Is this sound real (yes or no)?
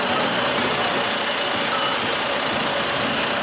yes